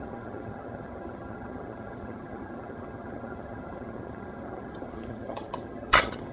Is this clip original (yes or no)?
no